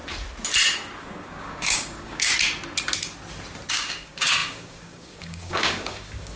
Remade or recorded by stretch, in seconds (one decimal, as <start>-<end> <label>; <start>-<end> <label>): 0.0-1.0 recorded; 1.0-2.3 remade; 2.3-3.7 recorded; 3.7-6.4 remade